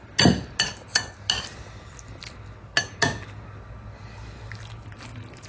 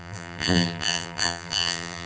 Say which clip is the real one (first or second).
first